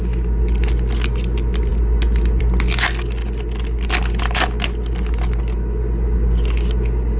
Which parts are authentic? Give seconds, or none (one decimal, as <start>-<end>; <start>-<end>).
0.0-7.2